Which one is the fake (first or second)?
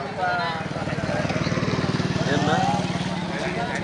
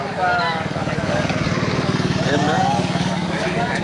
second